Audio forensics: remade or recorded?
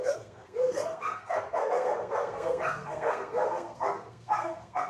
remade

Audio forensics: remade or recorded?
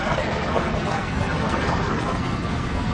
remade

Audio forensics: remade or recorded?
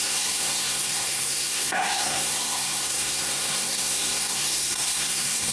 remade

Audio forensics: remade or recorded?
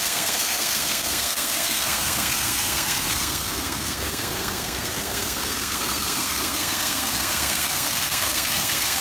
remade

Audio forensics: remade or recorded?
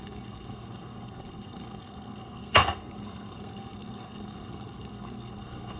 remade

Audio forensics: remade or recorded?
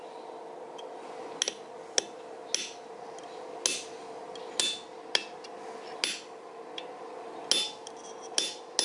recorded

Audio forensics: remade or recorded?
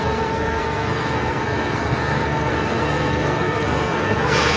remade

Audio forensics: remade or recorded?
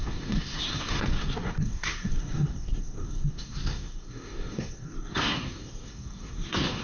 remade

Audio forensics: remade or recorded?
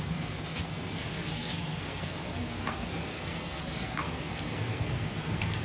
remade